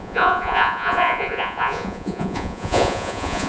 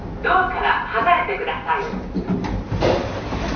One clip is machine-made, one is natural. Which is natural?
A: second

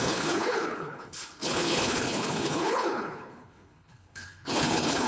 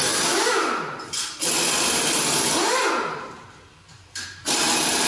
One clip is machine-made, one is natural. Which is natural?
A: second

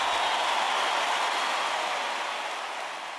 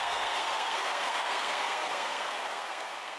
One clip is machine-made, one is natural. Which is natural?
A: first